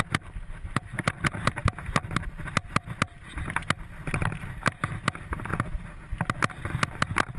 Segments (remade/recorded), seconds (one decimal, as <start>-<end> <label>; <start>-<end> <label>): 0.0-7.4 recorded